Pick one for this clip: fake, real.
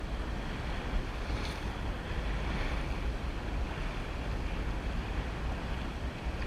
real